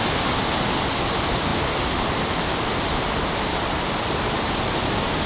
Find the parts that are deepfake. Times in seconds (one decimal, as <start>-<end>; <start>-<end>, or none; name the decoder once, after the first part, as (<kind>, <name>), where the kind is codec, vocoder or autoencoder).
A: none